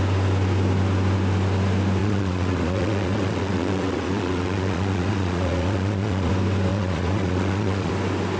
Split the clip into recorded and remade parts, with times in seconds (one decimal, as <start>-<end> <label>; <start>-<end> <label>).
0.0-2.0 recorded; 2.0-6.3 remade; 6.3-6.7 recorded; 6.7-7.9 remade; 7.9-8.4 recorded